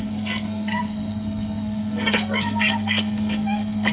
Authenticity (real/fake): fake